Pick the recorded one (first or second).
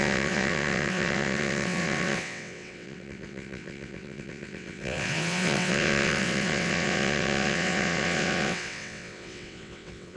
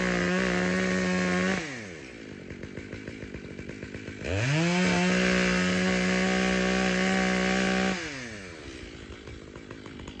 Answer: second